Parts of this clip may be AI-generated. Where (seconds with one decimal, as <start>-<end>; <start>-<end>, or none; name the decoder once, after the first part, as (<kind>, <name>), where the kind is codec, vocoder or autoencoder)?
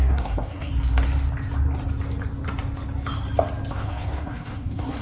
0.0-0.7 (codec, SNAC); 3.7-5.0